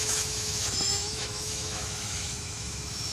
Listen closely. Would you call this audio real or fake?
fake